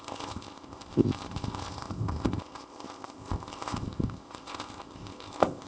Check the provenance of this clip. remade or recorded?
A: remade